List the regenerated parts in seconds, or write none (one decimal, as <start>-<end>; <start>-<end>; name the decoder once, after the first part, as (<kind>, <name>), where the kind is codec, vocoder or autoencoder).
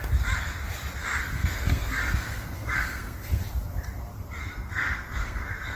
1.0-3.4 (codec, SNAC); 4.4-5.8